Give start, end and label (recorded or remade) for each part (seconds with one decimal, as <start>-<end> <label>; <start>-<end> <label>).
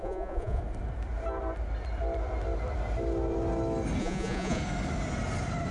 0.0-0.6 remade; 0.6-4.0 recorded; 4.0-4.6 remade; 4.6-5.7 recorded